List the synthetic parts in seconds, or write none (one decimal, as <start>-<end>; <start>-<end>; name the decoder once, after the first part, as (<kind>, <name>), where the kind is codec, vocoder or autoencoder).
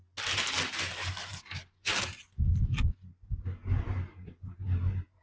none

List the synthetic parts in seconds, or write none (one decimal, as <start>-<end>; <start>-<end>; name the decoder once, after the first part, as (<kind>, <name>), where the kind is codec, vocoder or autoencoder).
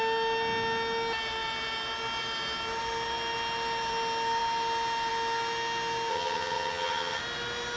6.1-7.2 (vocoder, HiFi-GAN)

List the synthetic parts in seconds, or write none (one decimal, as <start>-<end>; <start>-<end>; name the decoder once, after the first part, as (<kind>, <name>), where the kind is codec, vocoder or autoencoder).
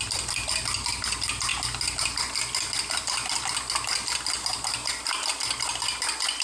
none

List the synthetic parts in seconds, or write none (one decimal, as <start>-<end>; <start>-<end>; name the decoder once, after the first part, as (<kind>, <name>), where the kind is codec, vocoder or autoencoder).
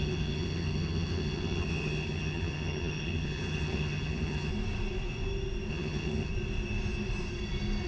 0.0-4.5 (vocoder, HiFi-GAN); 5.7-6.3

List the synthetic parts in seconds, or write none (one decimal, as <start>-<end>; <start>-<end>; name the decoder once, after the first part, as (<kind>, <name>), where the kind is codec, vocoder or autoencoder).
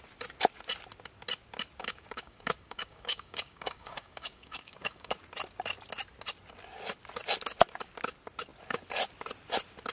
1.8-5.2 (codec, DAC)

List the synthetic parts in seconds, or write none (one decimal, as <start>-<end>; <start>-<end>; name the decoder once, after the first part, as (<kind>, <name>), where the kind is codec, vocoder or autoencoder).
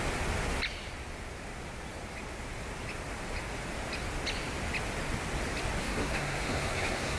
5.8-7.2 (codec, SNAC)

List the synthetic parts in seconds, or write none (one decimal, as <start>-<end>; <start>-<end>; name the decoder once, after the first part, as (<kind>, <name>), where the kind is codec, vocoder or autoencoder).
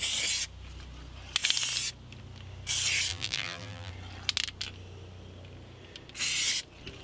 3.1-3.9 (vocoder, BigVGAN v2)